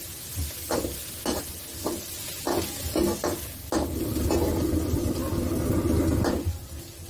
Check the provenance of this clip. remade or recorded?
recorded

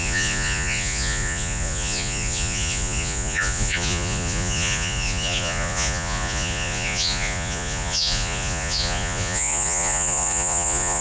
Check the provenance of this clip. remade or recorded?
remade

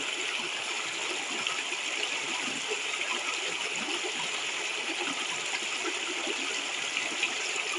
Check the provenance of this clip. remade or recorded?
recorded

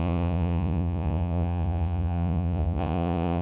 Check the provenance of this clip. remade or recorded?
remade